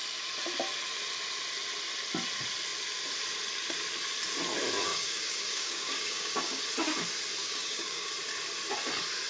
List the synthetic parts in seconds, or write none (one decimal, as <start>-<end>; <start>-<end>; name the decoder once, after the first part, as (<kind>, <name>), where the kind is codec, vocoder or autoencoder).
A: 4.9-6.6 (codec, DAC); 7.4-8.1